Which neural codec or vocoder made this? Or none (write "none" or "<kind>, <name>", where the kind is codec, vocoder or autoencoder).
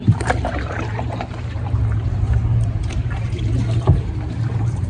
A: vocoder, BigVGAN v2